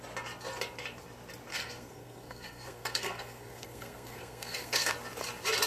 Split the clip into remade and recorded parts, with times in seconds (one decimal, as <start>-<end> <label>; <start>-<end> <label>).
0.0-1.5 recorded; 1.5-4.9 remade; 4.9-5.7 recorded